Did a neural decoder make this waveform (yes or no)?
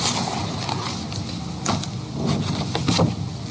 no